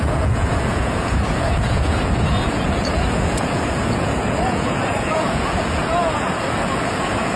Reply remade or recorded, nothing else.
remade